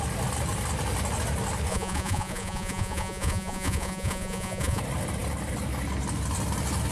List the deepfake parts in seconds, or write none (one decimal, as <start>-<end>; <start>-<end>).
1.7-4.8